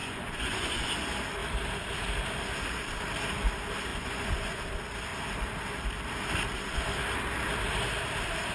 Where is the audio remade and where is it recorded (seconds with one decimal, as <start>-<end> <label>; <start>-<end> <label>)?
0.0-0.9 remade; 0.9-3.9 recorded; 3.9-4.6 remade; 4.6-8.5 recorded